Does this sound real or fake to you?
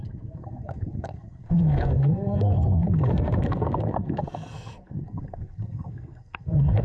fake